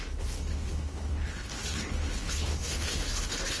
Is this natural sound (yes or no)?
no